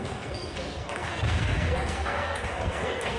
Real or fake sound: fake